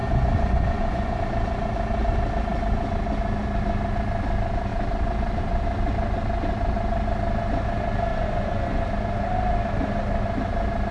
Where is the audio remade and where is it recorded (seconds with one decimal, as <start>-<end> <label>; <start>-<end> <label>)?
0.0-1.2 remade; 1.2-8.1 recorded; 8.1-8.9 remade; 8.9-10.9 recorded